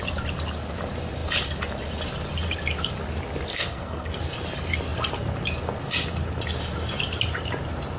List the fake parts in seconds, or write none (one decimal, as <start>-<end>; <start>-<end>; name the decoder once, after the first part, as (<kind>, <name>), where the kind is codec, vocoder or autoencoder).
3.5-4.2 (codec, SNAC)